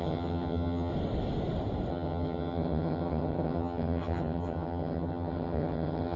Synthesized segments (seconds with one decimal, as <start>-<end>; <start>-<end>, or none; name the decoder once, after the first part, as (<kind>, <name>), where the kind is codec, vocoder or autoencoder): 0.0-0.9 (vocoder, HiFi-GAN); 1.9-6.2